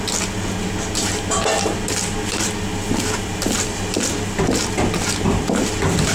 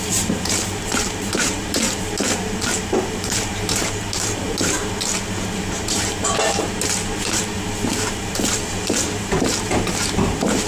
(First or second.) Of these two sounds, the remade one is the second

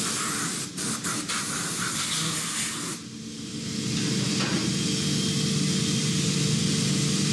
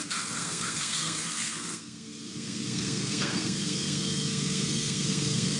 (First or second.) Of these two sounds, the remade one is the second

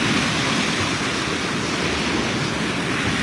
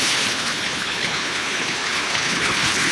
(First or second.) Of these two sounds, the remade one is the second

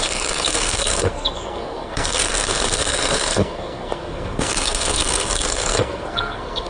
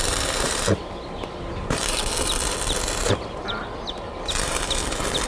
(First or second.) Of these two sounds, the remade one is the first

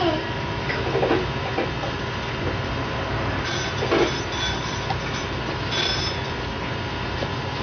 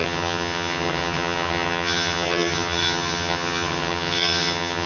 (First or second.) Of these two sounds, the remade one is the second